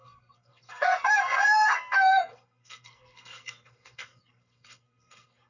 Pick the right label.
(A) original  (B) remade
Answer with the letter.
B